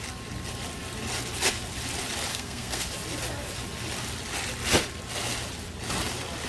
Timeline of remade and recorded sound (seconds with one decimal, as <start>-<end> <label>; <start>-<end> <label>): 0.0-2.3 recorded; 2.3-2.9 remade; 2.9-6.5 recorded